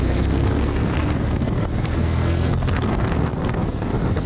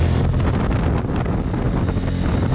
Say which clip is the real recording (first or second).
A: second